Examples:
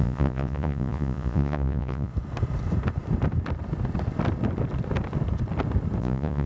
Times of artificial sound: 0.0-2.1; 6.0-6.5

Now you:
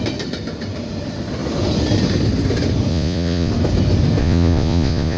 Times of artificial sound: 2.9-3.5; 4.2-5.2

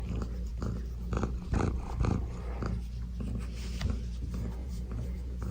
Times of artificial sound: 4.6-5.5

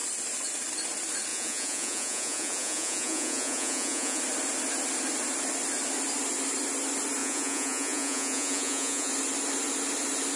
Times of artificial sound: 1.3-4.2; 7.2-9.1